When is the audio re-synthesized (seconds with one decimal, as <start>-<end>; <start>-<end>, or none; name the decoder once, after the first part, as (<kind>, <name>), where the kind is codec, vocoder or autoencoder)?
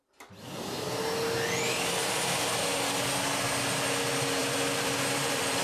4.4-5.6 (vocoder, BigVGAN v2)